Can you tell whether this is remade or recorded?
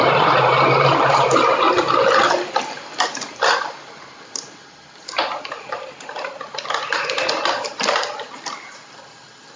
recorded